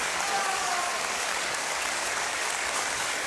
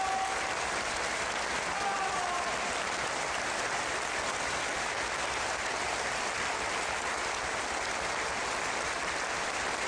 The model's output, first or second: first